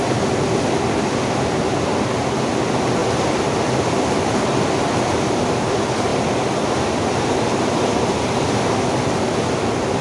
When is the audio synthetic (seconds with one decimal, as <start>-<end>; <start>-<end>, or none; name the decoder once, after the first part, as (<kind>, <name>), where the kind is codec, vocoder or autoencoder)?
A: 3.0-4.6 (vocoder, BigVGAN v2); 6.1-8.4